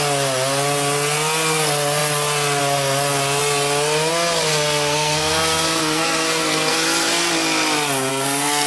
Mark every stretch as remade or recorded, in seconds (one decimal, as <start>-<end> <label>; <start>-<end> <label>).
0.0-4.5 recorded; 4.5-7.3 remade; 7.3-8.1 recorded; 8.1-8.7 remade